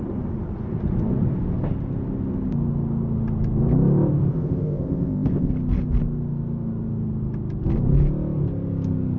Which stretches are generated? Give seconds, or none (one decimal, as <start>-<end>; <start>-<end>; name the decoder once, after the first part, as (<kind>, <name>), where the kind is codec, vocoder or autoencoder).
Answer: 4.3-5.5 (codec, ZipCodec)